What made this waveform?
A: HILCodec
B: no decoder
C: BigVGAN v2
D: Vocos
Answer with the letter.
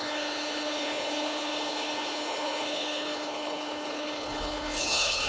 A